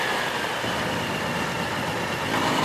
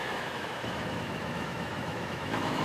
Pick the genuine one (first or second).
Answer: first